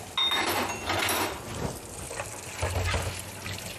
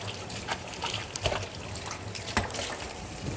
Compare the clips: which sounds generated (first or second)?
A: second